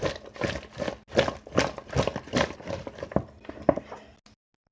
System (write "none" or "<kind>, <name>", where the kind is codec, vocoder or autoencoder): none